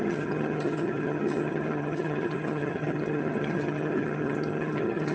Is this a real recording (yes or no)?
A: no